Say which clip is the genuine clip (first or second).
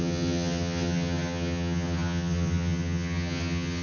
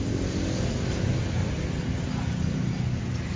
second